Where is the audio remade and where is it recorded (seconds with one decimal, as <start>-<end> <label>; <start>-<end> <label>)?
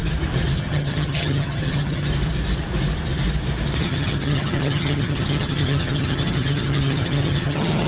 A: 0.0-0.6 recorded; 0.6-2.1 remade; 2.1-3.8 recorded; 3.8-7.9 remade